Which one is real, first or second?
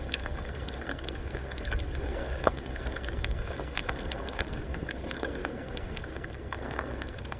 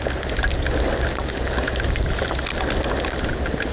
second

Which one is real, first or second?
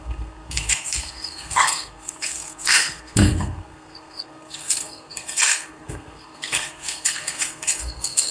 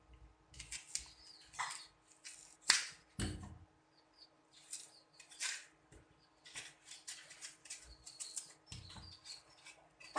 second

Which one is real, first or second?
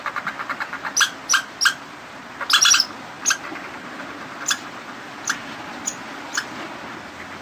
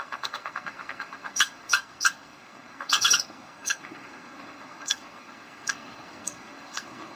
first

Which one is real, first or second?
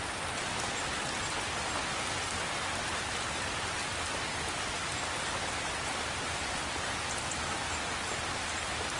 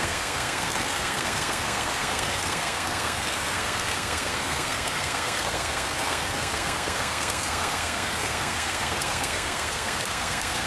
first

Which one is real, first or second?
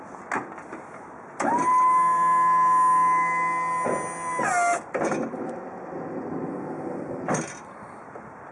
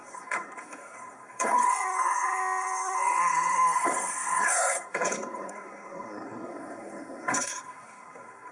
first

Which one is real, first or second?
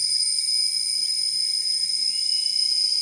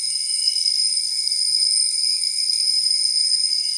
first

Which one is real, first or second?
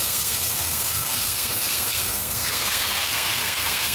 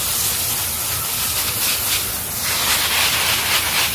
second